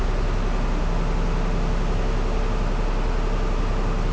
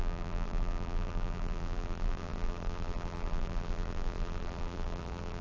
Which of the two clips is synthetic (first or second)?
second